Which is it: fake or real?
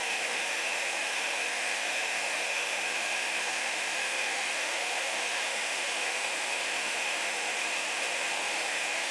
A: fake